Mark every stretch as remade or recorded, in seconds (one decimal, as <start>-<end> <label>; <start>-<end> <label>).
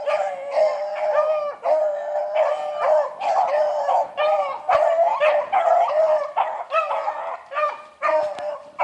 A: 0.0-1.1 remade; 1.1-2.2 recorded; 2.2-5.1 remade; 5.1-5.7 recorded; 5.7-8.8 remade